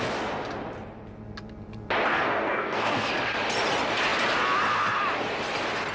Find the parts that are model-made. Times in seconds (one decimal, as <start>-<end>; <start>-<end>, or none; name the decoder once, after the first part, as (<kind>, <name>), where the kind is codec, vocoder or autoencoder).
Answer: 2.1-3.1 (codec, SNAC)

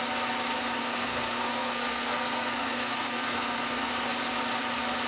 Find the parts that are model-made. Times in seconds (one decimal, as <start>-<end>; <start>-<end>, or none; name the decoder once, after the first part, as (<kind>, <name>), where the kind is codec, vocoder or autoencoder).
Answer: 0.8-3.9 (codec, SNAC)

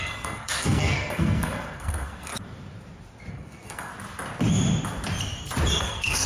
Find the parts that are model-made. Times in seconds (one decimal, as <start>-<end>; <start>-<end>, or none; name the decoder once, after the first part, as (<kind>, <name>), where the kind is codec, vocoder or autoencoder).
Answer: 0.0-2.3 (codec, SNAC); 3.3-3.9; 5.8-6.3